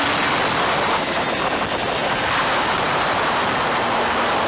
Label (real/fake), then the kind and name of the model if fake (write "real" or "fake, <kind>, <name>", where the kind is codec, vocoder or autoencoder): real